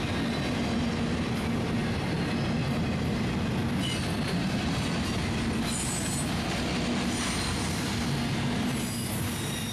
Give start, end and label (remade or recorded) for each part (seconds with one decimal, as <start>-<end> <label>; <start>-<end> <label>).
0.0-9.7 recorded